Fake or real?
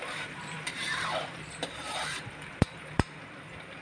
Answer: fake